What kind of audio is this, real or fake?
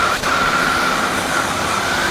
fake